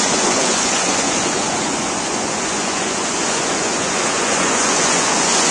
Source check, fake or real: fake